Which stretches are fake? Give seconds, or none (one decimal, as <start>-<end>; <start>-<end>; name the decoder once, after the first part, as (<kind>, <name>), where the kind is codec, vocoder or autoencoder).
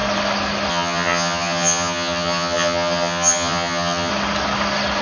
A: 0.7-4.1 (vocoder, HiFi-GAN)